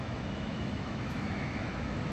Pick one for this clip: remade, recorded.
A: remade